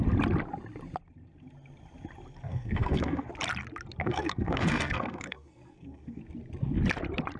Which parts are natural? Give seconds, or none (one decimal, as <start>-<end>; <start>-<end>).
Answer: 0.0-2.5; 3.3-4.0; 6.2-7.4